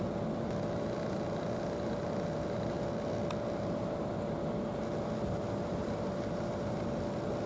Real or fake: real